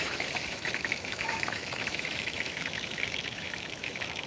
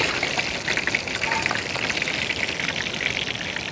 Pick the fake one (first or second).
first